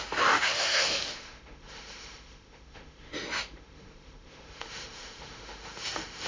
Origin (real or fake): fake